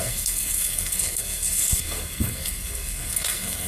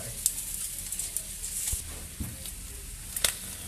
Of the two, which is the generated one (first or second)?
first